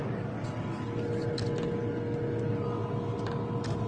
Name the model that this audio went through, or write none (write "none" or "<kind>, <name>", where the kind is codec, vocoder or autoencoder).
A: none